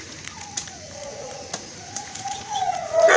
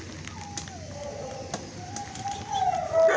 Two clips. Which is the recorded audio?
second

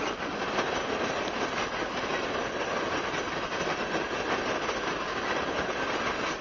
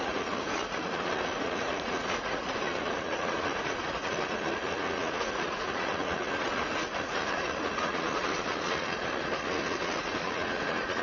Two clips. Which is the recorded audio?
first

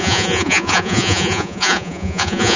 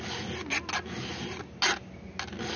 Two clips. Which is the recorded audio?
second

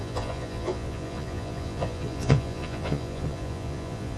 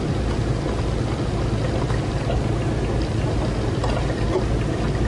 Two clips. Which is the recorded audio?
second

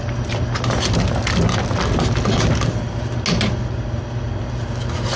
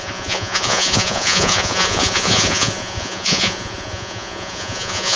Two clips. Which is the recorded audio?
first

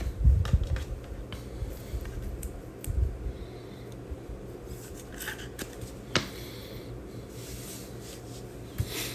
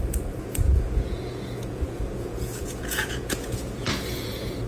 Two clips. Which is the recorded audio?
first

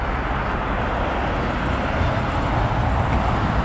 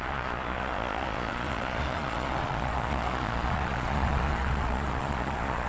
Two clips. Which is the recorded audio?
first